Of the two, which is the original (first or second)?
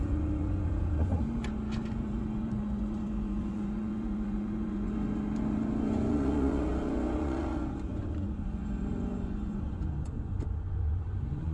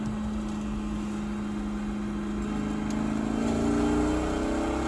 second